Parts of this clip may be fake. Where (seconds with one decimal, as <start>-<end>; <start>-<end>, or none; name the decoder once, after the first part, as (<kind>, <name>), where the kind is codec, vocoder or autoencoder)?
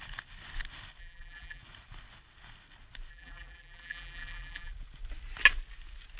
1.0-1.6 (vocoder, BigVGAN v2); 3.1-4.7